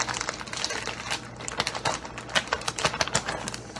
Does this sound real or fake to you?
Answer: real